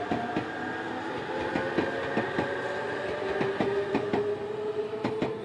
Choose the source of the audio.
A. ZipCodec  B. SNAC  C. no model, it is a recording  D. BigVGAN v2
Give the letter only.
C